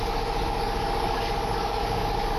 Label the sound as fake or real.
fake